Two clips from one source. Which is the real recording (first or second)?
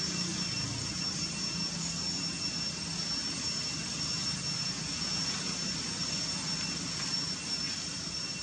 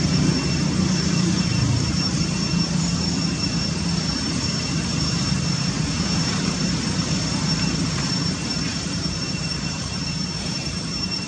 first